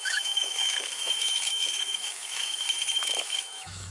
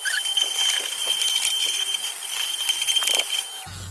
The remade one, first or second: first